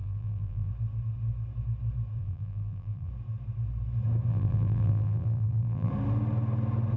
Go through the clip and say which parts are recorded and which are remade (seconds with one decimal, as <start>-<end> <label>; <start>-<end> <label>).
0.0-0.7 remade; 0.7-2.2 recorded; 2.2-3.1 remade; 3.1-4.3 recorded; 4.3-5.9 remade; 5.9-7.0 recorded